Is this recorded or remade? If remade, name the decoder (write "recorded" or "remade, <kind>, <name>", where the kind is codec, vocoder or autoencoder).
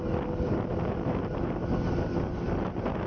recorded